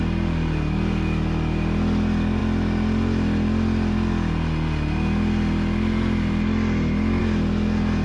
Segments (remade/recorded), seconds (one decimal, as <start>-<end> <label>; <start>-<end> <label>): 0.0-8.0 recorded